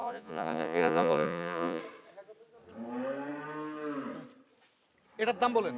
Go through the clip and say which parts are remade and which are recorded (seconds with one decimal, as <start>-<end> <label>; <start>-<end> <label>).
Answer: 0.0-1.8 remade; 1.8-5.8 recorded